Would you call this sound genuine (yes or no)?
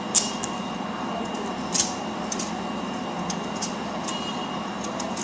yes